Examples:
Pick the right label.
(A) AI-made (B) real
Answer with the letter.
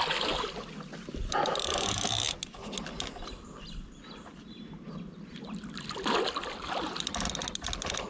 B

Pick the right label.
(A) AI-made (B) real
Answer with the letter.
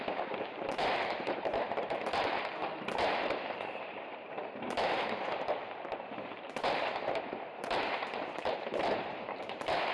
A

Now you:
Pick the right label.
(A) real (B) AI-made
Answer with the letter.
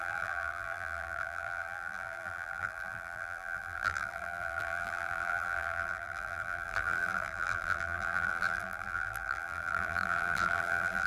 B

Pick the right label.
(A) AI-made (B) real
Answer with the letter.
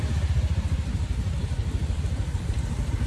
A